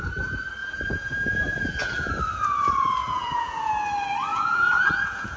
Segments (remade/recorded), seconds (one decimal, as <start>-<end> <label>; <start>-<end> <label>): 0.0-0.6 recorded; 0.6-2.1 remade; 2.1-3.0 recorded; 3.0-3.7 remade; 3.7-4.3 recorded; 4.3-5.4 remade